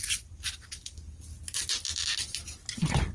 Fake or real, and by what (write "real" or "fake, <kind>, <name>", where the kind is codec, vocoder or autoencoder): real